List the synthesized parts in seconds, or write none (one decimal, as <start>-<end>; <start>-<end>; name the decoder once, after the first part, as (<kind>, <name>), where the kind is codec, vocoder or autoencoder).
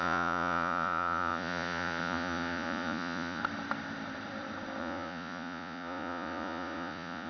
0.0-3.4 (vocoder, Vocos); 4.8-7.3